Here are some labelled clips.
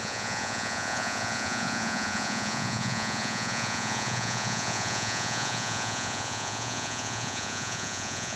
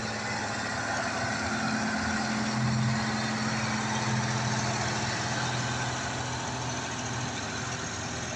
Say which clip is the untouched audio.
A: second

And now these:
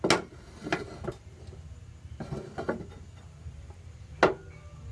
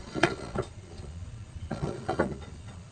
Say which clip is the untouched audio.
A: first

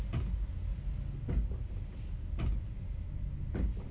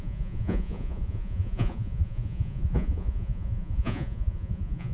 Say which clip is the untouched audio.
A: first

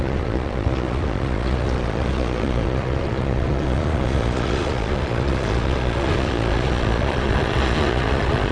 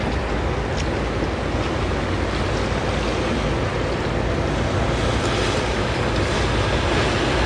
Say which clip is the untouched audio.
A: second